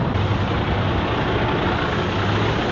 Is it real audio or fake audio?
real